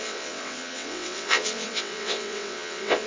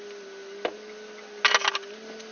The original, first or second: second